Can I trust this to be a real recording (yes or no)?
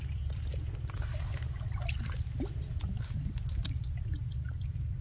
yes